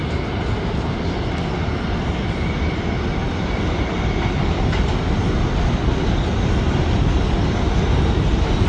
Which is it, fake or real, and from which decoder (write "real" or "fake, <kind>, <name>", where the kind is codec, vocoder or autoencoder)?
real